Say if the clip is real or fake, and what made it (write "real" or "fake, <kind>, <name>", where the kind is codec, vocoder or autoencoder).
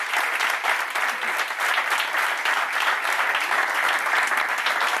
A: real